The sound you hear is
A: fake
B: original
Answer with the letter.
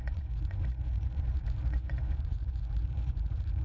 A